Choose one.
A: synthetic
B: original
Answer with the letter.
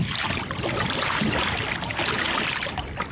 A